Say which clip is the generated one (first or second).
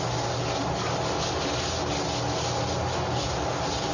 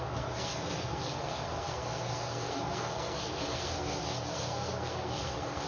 second